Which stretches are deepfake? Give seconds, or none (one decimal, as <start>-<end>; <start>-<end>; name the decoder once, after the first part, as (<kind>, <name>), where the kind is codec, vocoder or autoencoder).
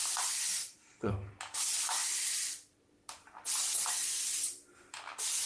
0.4-1.1 (codec, SNAC)